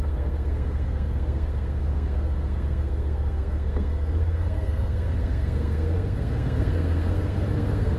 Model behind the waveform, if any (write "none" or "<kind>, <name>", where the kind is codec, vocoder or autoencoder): codec, SNAC